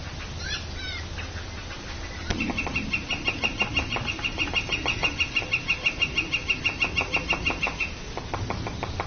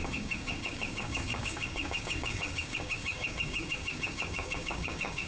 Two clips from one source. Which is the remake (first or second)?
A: second